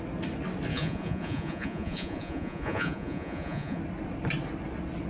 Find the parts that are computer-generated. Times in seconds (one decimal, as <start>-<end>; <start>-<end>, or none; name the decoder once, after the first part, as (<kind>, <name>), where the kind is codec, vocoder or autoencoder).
0.7-3.8 (vocoder, Vocos)